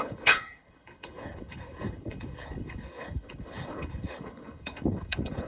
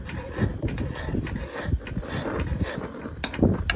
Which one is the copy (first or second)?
first